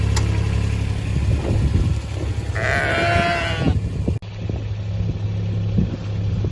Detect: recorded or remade recorded